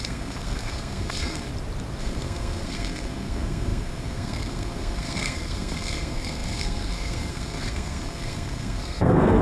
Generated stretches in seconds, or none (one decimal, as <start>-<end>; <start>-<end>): 0.0-1.5; 2.0-9.4